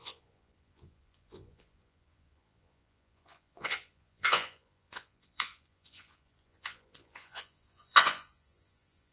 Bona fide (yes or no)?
no